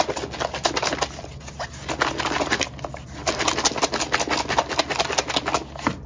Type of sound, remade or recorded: recorded